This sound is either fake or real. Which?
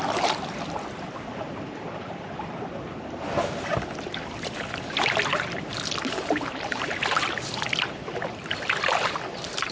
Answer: fake